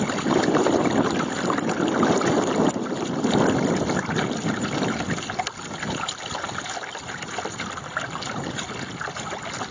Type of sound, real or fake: real